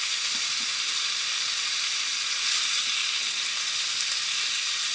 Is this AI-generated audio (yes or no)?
no